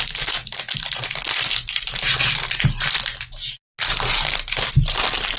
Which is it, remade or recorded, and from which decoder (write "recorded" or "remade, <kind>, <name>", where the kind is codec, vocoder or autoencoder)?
recorded